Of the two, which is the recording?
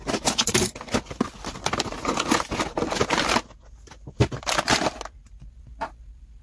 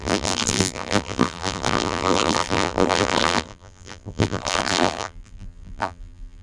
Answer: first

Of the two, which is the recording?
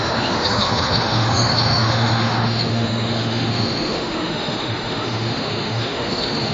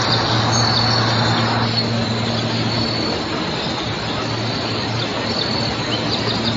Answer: second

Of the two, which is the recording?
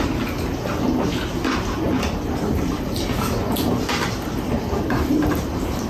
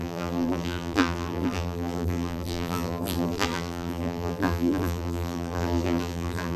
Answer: first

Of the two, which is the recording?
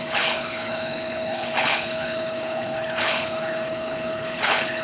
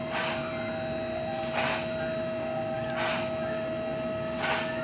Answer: second